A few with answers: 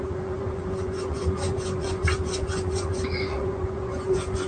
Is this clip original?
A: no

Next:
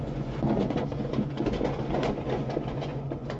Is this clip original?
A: no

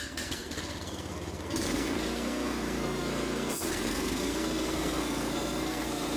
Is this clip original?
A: no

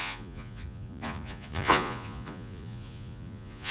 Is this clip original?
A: no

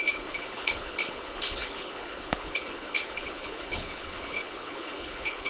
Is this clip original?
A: no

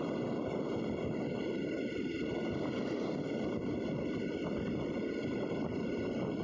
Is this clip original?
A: yes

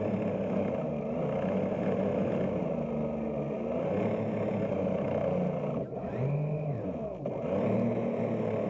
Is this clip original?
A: yes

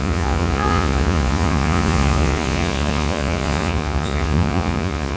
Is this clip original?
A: no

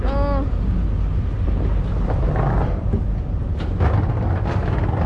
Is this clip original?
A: yes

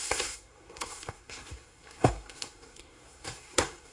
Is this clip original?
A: no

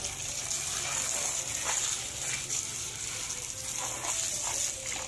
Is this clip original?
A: yes